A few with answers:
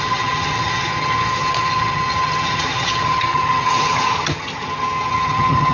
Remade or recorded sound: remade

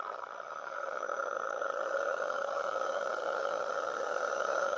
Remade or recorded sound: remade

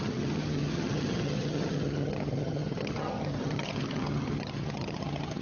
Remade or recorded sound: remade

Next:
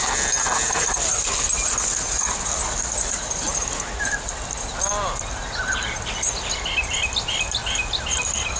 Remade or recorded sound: recorded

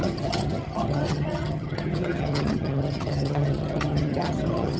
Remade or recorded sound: remade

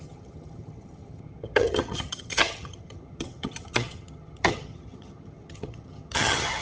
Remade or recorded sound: remade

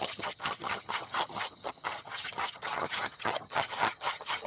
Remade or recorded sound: remade